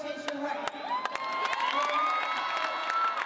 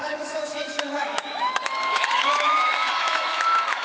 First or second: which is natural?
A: first